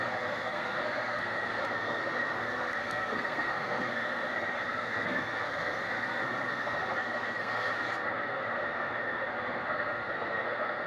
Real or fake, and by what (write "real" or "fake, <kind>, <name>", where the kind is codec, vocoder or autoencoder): fake, codec, SNAC